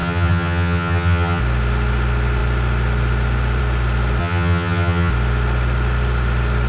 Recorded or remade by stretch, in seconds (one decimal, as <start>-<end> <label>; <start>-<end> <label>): 0.0-1.4 remade; 1.4-4.2 recorded; 4.2-5.1 remade; 5.1-6.7 recorded